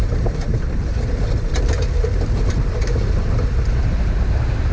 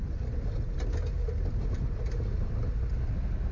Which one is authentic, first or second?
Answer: second